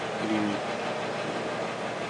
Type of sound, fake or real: real